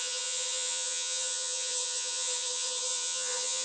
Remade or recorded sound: remade